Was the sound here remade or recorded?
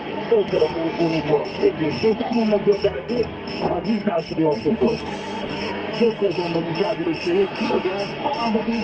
remade